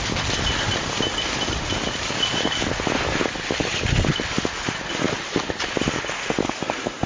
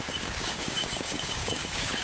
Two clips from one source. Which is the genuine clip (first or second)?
first